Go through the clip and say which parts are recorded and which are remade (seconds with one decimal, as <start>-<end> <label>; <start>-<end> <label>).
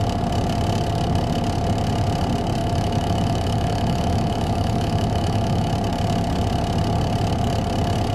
0.0-2.6 recorded; 2.6-5.7 remade; 5.7-8.1 recorded